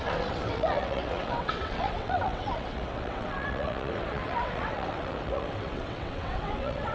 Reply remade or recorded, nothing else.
remade